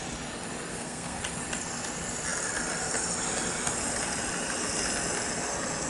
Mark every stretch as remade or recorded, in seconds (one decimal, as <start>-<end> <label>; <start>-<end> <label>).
0.0-0.7 recorded; 0.7-1.2 remade; 1.2-5.9 recorded